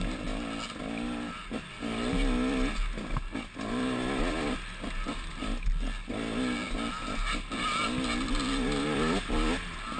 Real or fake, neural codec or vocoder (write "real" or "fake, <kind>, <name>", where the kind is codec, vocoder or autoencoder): real